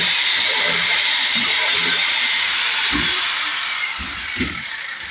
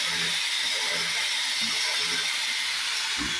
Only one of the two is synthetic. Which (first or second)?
first